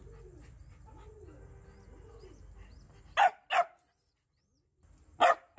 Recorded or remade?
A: recorded